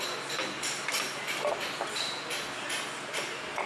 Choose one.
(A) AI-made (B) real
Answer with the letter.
B